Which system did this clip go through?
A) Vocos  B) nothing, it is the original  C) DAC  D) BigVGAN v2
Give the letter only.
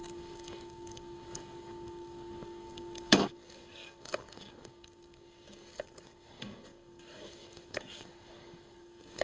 C